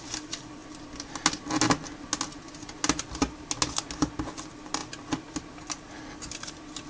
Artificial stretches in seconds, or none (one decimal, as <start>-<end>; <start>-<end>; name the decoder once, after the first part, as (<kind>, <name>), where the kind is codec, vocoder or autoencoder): none

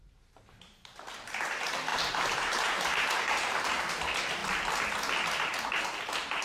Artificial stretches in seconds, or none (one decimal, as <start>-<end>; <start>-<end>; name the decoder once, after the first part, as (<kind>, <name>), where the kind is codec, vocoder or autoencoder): 1.9-3.9 (vocoder, BigVGAN v2)

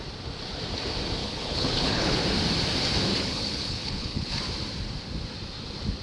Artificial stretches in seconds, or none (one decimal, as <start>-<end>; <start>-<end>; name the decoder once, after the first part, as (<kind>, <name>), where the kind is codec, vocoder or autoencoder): 1.2-2.2 (codec, HILCodec); 3.1-4.4

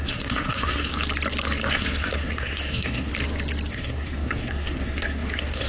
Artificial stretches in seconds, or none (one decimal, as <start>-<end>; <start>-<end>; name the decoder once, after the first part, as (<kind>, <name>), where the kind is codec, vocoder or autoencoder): 0.0-0.9 (codec, SNAC); 1.7-3.1; 3.7-5.7

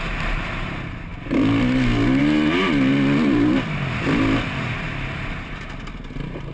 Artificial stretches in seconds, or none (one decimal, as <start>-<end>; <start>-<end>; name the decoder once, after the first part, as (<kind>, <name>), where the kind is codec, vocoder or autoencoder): none

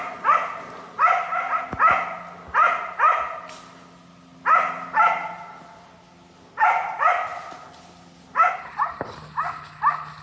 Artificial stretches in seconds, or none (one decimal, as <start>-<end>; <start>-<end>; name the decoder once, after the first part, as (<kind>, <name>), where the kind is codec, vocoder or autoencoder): none

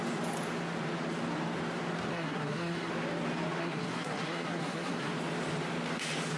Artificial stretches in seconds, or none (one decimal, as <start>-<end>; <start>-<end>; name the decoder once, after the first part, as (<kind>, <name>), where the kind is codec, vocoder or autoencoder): 2.1-2.9 (codec, SNAC); 3.6-5.1

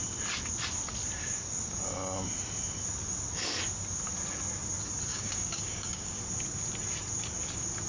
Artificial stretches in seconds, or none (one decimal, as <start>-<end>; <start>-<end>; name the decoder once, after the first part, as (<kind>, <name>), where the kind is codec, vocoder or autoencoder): 5.1-6.2 (codec, DAC)